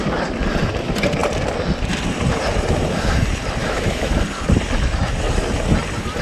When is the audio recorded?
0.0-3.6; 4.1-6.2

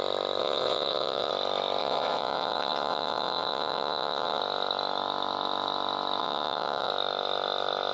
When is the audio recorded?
0.0-0.4; 1.3-1.8; 4.4-6.2; 6.9-7.9

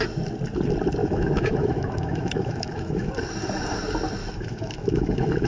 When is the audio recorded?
0.0-1.0; 3.1-4.2

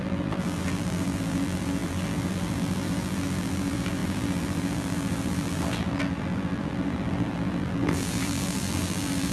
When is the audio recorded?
none

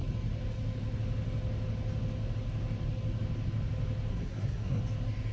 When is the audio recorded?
0.0-4.1; 4.8-5.3

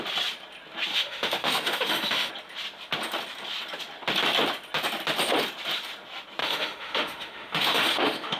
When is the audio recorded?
0.0-0.9; 2.3-6.4